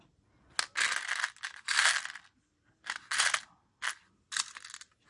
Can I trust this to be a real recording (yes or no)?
yes